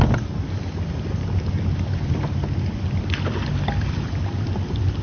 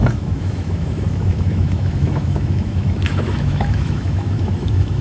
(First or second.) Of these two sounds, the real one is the first